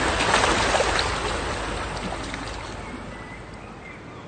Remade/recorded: recorded